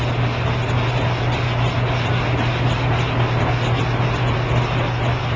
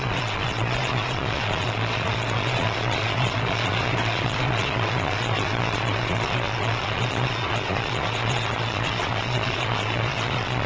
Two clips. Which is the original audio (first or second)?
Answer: first